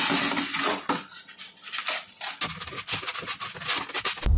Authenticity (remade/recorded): recorded